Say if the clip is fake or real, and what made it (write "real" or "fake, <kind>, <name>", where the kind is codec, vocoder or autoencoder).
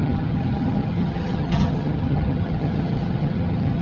fake, vocoder, HiFi-GAN